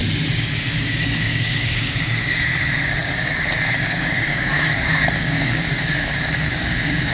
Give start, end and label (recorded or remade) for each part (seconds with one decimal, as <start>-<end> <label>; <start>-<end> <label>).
0.0-0.7 recorded; 0.7-7.1 remade

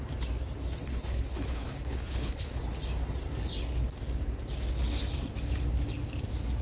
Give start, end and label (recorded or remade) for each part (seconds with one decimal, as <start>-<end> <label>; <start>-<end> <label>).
0.0-0.8 recorded; 0.8-2.6 remade; 2.6-6.6 recorded

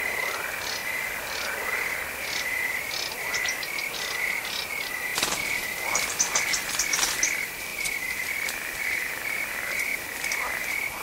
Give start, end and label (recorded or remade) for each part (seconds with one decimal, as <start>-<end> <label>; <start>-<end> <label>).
0.0-7.7 recorded; 7.7-9.1 remade; 9.1-9.9 recorded; 9.9-10.5 remade; 10.5-11.0 recorded

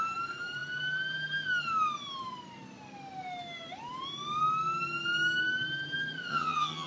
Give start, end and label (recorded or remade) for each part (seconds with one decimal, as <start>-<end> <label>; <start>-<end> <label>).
0.0-6.3 recorded; 6.3-6.9 remade

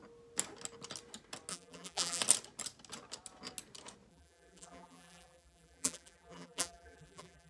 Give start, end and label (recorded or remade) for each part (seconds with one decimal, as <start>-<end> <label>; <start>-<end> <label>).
0.0-1.5 recorded; 1.5-2.2 remade; 2.2-4.1 recorded; 4.1-7.5 remade

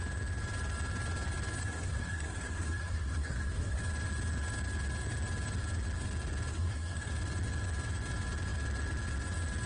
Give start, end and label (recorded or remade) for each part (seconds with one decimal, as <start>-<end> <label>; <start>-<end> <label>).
0.0-1.6 recorded; 1.6-3.8 remade; 3.8-6.5 recorded; 6.5-7.1 remade; 7.1-9.7 recorded